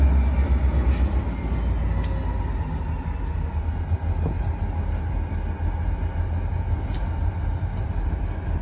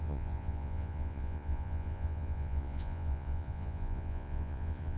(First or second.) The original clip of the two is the first